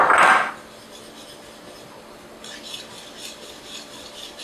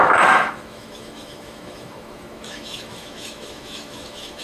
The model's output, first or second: second